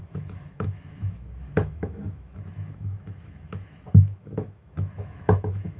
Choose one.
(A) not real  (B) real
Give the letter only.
A